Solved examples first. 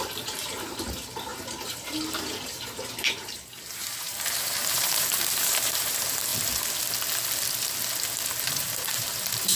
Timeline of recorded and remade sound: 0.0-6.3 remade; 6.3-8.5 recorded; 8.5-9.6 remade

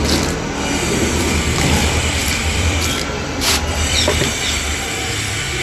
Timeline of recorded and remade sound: 0.0-2.2 recorded; 2.2-4.3 remade; 4.3-5.6 recorded

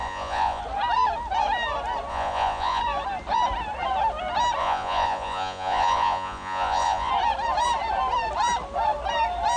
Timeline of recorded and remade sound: 0.0-0.6 remade; 0.6-2.1 recorded; 2.1-2.8 remade; 2.8-4.6 recorded; 4.6-7.1 remade; 7.1-9.6 recorded

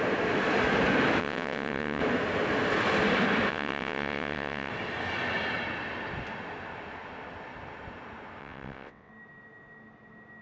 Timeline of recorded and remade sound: 0.0-1.2 recorded; 1.2-2.0 remade; 2.0-3.5 recorded; 3.5-4.7 remade; 4.7-8.4 recorded; 8.4-9.1 remade; 9.1-10.4 recorded

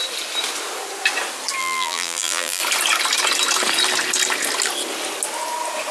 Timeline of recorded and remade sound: 0.0-1.6 recorded; 1.6-2.6 remade; 2.6-5.9 recorded